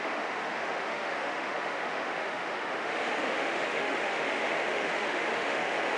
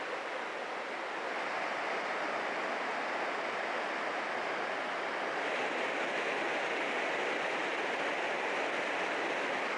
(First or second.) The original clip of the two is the second